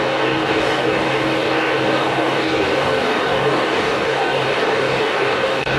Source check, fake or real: fake